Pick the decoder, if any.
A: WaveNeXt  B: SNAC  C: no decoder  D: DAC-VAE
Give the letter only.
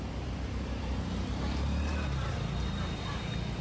C